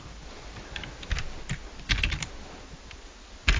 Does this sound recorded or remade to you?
recorded